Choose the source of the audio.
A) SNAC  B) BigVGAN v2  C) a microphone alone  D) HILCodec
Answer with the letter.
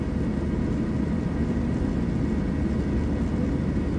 C